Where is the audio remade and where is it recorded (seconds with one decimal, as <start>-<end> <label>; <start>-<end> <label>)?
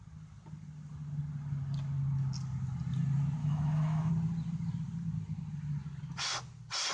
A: 0.0-3.4 recorded; 3.4-4.1 remade; 4.1-6.9 recorded